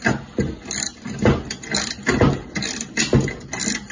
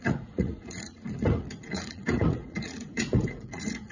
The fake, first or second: second